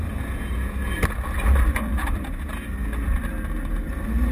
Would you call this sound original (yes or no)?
yes